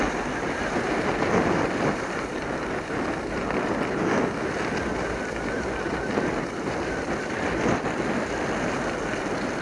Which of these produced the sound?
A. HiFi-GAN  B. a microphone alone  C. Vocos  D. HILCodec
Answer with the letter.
B